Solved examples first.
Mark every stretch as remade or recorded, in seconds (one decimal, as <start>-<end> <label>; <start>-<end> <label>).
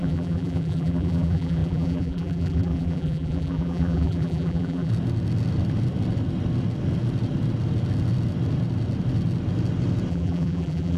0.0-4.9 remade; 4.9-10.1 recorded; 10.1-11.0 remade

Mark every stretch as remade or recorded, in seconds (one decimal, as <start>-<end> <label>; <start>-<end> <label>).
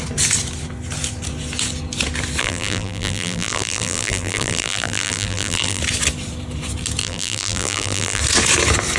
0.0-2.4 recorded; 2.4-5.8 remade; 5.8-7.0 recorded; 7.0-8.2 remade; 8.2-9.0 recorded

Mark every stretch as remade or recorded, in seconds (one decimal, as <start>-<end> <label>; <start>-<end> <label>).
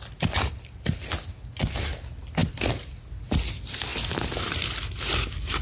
0.0-2.4 recorded; 2.4-3.1 remade; 3.1-5.6 recorded